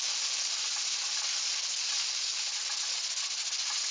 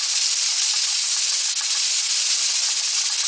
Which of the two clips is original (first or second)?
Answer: second